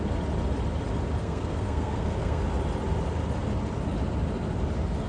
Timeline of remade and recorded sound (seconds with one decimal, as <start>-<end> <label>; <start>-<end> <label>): 0.0-1.2 recorded; 1.2-2.4 remade; 2.4-5.1 recorded